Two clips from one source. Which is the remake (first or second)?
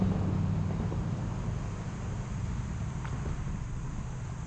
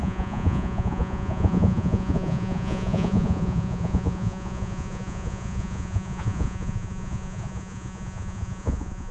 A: second